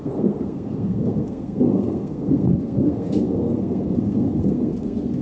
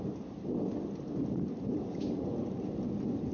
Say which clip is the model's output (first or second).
first